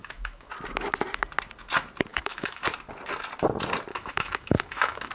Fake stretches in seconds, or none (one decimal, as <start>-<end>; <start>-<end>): 0.0-0.5; 2.1-2.6; 3.9-5.1